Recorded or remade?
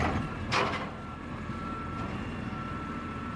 recorded